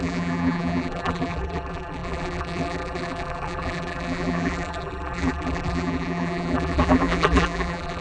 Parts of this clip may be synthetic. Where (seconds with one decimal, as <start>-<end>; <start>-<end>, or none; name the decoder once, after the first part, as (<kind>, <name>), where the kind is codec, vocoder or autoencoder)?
0.0-8.0 (vocoder, BigVGAN v2)